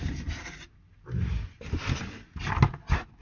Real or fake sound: real